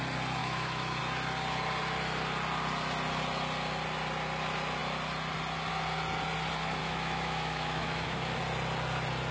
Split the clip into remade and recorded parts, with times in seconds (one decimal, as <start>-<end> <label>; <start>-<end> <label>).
0.0-0.4 recorded; 0.4-1.0 remade; 1.0-6.8 recorded; 6.8-8.4 remade; 8.4-9.3 recorded